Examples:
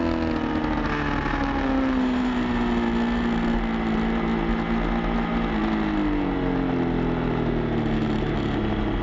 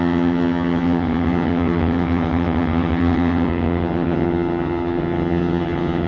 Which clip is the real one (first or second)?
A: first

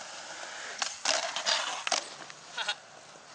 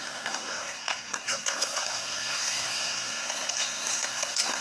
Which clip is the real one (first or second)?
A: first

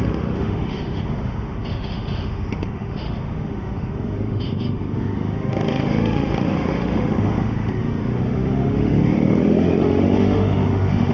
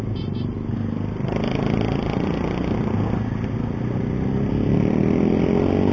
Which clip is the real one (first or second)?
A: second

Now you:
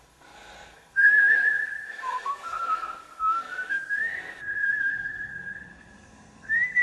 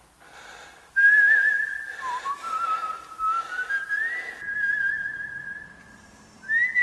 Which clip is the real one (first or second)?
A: second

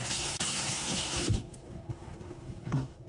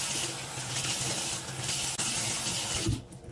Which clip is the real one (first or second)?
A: second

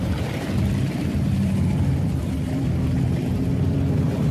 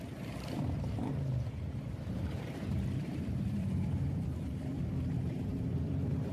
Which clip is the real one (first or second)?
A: first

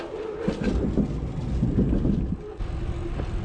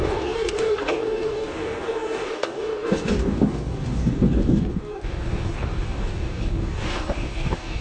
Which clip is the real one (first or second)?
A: first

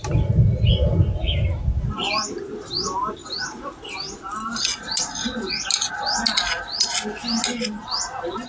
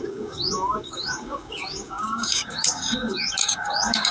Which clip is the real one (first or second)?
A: first